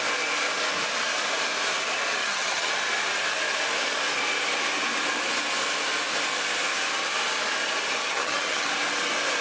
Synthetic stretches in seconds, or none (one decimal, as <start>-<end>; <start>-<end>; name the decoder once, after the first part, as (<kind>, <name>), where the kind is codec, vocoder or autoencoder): 2.2-2.7 (vocoder, HiFi-GAN); 8.0-8.7